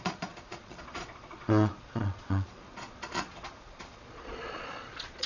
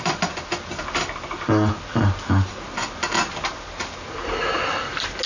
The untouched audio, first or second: second